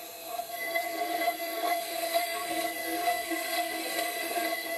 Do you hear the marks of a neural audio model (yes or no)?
yes